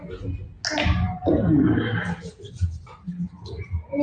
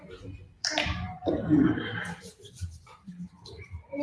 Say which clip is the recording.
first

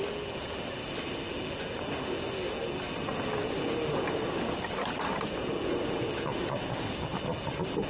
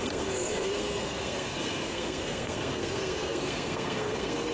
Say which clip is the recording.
first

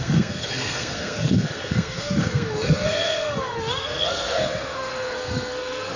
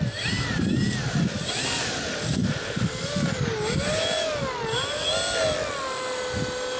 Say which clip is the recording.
second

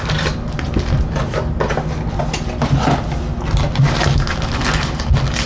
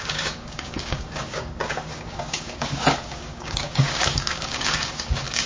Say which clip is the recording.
first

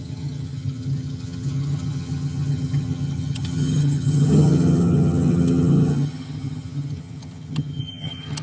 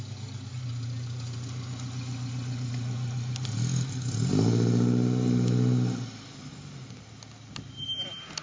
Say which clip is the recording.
second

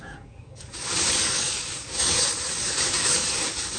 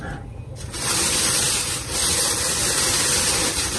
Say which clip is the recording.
second